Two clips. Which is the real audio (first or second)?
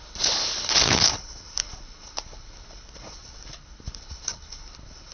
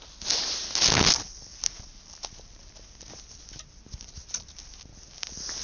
second